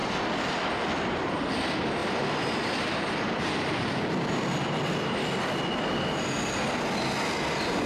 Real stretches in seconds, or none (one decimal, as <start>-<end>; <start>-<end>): 0.0-2.0; 4.0-7.9